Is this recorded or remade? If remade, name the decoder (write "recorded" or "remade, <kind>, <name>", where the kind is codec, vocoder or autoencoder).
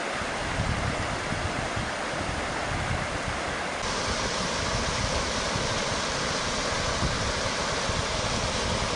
recorded